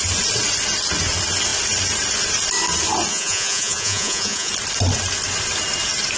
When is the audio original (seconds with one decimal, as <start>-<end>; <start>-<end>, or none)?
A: 0.0-3.1; 4.5-6.2